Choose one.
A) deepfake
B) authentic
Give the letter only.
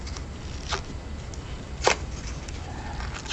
B